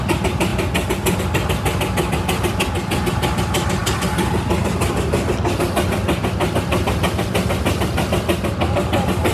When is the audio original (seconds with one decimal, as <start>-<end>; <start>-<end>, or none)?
0.0-9.3